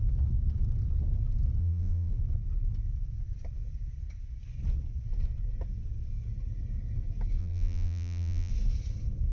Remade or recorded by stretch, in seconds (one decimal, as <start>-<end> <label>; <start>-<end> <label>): 0.0-1.6 recorded; 1.6-2.1 remade; 2.1-7.4 recorded; 7.4-8.5 remade; 8.5-9.3 recorded